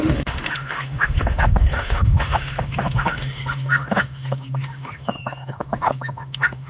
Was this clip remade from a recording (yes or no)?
yes